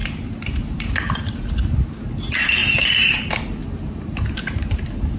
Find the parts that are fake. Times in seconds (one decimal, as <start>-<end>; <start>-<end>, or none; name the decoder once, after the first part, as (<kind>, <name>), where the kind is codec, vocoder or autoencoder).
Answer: 0.0-1.5 (vocoder, BigVGAN v2); 2.6-3.2; 3.6-4.8